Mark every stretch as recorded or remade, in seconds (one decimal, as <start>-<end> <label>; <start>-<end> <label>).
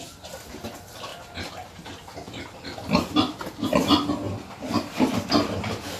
0.0-6.0 recorded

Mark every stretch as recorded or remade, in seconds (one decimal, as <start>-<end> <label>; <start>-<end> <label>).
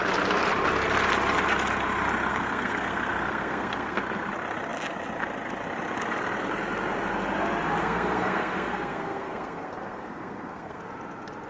0.0-2.3 recorded; 2.3-4.0 remade; 4.0-7.8 recorded; 7.8-10.8 remade; 10.8-11.5 recorded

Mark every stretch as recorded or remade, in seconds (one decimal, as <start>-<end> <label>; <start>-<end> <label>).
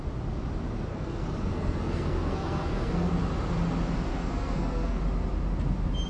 0.0-0.9 recorded; 0.9-3.1 remade; 3.1-4.1 recorded; 4.1-5.0 remade; 5.0-6.1 recorded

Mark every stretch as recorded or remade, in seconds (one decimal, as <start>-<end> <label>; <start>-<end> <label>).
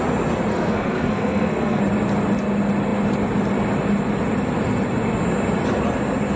0.0-0.5 recorded; 0.5-1.8 remade; 1.8-6.4 recorded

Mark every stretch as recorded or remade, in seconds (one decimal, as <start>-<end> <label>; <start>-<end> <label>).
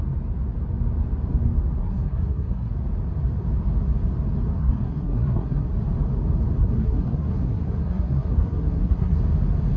0.0-1.8 recorded; 1.8-2.7 remade; 2.7-4.6 recorded; 4.6-5.7 remade; 5.7-6.6 recorded; 6.6-9.2 remade; 9.2-9.8 recorded